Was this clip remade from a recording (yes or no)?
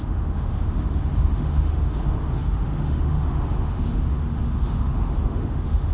yes